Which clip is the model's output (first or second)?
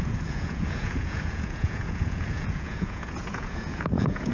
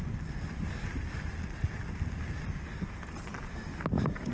first